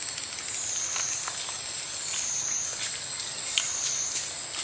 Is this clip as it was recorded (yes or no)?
yes